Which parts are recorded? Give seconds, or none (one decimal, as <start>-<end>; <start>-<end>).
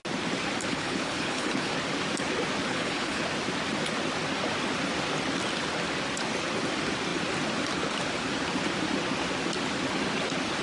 0.0-0.7; 1.7-2.7; 3.2-10.6